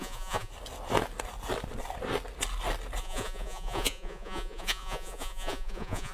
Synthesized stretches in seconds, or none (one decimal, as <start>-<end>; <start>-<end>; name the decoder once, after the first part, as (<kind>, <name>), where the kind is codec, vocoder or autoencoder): 0.0-0.5 (vocoder, Vocos); 3.0-6.1